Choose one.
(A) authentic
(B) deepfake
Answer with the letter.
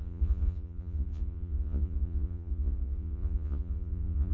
B